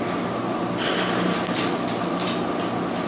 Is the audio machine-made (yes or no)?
no